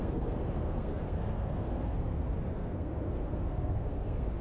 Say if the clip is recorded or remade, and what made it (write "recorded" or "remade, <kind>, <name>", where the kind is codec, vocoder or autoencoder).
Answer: remade, codec, SNAC